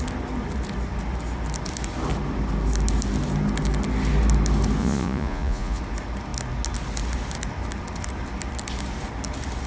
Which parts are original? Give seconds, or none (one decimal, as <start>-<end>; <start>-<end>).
0.0-4.8; 5.8-9.7